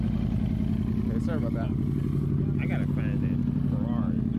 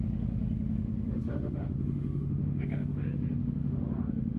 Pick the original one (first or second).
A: first